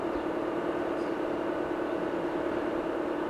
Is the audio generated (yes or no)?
yes